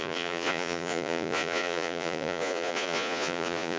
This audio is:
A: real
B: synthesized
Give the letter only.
B